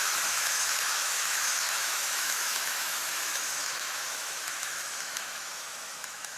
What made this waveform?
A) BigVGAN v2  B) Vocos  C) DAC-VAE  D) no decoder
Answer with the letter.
C